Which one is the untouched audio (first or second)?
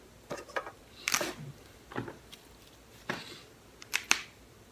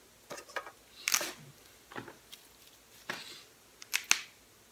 second